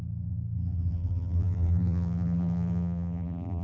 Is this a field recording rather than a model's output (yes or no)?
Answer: no